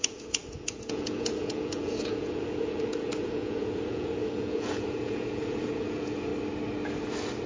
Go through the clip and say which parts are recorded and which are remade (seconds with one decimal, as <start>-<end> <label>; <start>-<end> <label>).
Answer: 0.0-6.3 remade; 6.3-7.5 recorded